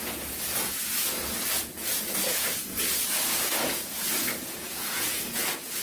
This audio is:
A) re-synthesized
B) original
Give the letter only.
A